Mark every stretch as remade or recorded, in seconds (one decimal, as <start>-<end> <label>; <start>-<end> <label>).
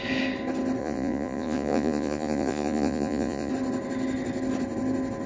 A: 0.0-0.8 recorded; 0.8-3.5 remade; 3.5-5.3 recorded